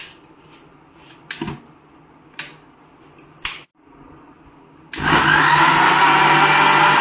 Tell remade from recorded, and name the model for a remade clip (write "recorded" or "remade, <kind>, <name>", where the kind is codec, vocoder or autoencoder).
recorded